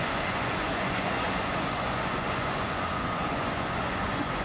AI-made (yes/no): yes